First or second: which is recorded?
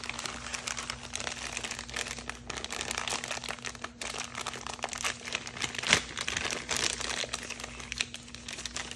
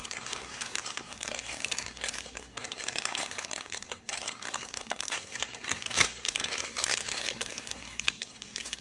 first